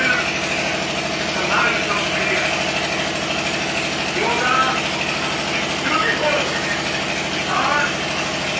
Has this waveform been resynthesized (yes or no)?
no